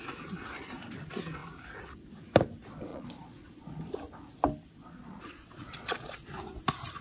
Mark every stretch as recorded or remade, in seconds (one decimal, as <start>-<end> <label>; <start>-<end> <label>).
0.0-2.9 recorded; 2.9-3.7 remade; 3.7-4.8 recorded; 4.8-6.3 remade; 6.3-7.0 recorded